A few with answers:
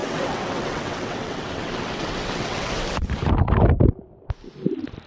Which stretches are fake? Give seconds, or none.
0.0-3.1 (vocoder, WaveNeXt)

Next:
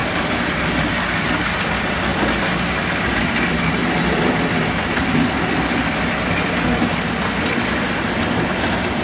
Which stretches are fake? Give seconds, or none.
none

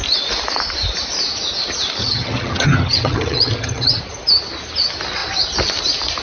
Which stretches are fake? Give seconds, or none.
2.0-4.0 (vocoder, HiFi-GAN)

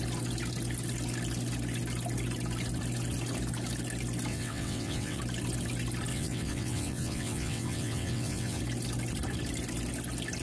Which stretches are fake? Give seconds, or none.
4.3-5.2 (vocoder, WaveNeXt); 6.1-8.6